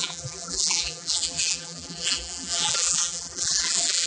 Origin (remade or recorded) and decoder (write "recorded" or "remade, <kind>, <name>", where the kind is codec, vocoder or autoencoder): remade, vocoder, BigVGAN v2